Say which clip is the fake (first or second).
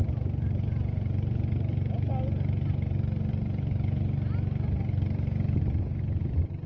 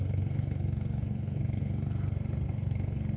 second